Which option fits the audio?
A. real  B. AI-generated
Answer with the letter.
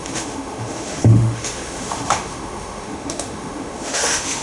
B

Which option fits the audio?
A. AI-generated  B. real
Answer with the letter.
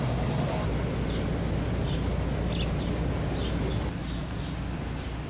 B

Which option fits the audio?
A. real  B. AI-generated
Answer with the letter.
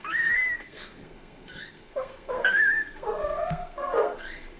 B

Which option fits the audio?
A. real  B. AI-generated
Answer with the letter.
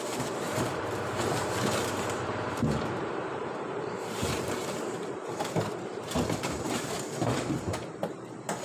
B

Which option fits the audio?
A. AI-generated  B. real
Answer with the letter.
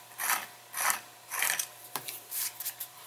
A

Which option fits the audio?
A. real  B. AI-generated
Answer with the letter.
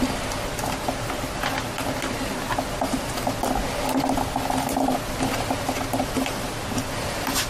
A